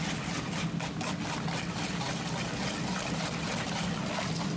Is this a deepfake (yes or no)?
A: no